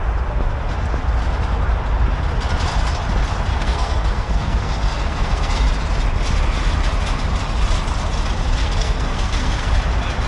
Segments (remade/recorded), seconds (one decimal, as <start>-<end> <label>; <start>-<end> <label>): 0.0-3.5 recorded; 3.5-5.6 remade; 5.6-8.6 recorded; 8.6-9.7 remade; 9.7-10.3 recorded

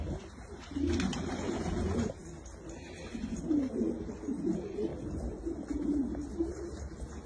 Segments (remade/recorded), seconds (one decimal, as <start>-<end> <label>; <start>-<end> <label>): 0.0-7.3 recorded

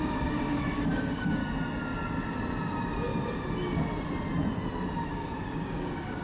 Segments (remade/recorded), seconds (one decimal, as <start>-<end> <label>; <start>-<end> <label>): 0.0-1.4 remade; 1.4-5.1 recorded; 5.1-6.2 remade

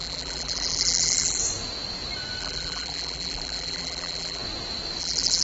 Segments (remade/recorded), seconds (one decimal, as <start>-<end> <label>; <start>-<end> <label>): 0.0-1.4 remade; 1.4-2.4 recorded; 2.4-4.4 remade; 4.4-5.0 recorded; 5.0-5.4 remade

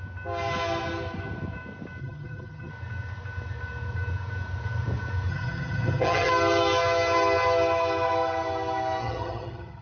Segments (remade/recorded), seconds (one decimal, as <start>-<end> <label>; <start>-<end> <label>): 0.0-2.0 recorded; 2.0-2.7 remade; 2.7-5.3 recorded; 5.3-6.3 remade; 6.3-9.0 recorded; 9.0-9.8 remade

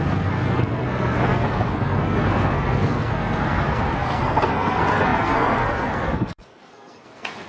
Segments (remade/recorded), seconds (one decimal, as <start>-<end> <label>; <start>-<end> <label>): 0.0-7.5 remade

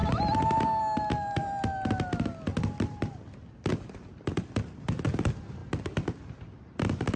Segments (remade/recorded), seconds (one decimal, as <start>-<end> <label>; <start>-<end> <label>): 0.0-7.2 recorded

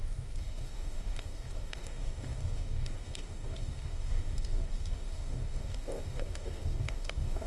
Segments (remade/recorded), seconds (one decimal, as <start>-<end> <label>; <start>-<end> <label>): 0.0-7.5 remade